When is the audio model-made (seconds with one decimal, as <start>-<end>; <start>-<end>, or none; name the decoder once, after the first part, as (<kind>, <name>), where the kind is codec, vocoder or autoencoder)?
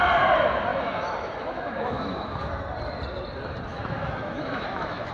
0.7-2.6 (autoencoder, DAC-VAE); 3.7-5.1